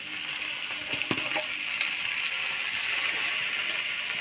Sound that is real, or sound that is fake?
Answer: real